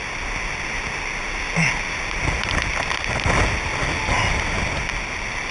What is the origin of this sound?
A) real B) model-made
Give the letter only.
A